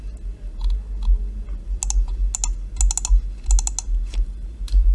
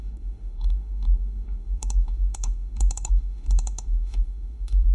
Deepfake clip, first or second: second